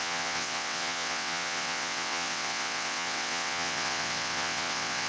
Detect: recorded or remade remade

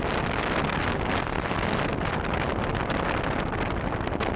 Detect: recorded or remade recorded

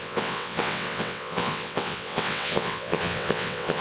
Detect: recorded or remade remade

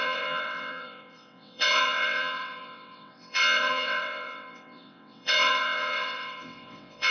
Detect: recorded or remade remade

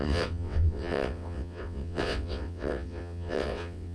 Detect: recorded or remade remade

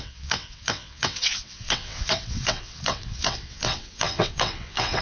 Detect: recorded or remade remade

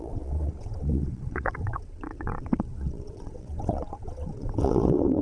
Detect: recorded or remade remade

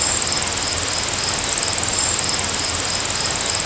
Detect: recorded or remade recorded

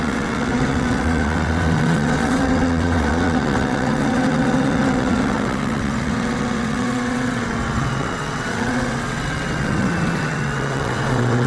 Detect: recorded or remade remade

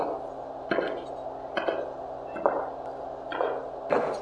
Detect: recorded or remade recorded